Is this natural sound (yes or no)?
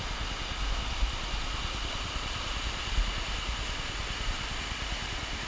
yes